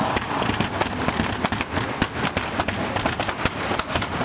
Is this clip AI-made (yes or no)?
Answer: yes